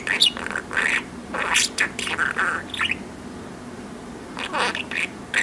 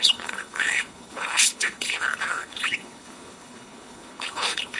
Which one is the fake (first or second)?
second